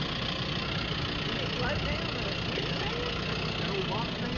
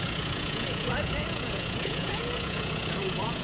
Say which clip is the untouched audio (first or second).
first